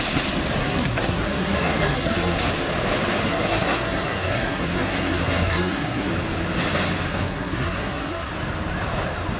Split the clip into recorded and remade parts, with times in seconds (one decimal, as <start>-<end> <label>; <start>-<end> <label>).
0.0-0.6 recorded; 0.6-2.5 remade; 2.5-3.2 recorded; 3.2-6.1 remade; 6.1-7.1 recorded; 7.1-8.3 remade; 8.3-9.4 recorded